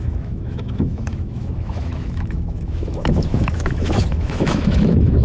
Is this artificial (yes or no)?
yes